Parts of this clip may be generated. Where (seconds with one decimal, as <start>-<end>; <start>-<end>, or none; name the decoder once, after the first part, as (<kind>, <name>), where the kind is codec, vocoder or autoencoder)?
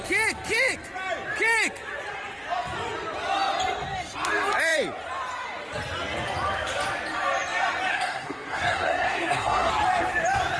7.9-9.7 (codec, SNAC)